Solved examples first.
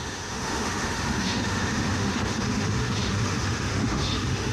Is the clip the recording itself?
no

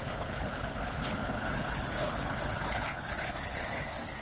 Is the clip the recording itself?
no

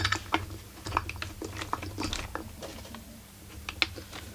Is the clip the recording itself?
yes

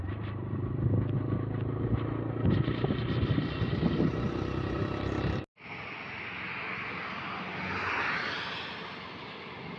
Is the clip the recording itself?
yes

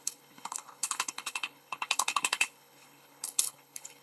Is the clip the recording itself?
no